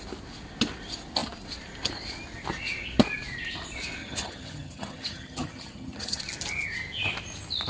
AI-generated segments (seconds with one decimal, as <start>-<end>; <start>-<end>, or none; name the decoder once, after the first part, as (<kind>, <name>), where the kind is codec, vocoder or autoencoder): 4.0-6.2 (vocoder, HiFi-GAN)